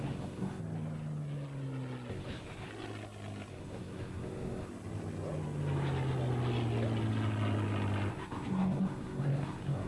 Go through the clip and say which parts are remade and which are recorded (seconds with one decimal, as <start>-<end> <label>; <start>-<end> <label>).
0.0-0.6 remade; 0.6-2.1 recorded; 2.1-2.7 remade; 2.7-3.5 recorded; 3.5-4.7 remade; 4.7-8.1 recorded; 8.1-9.9 remade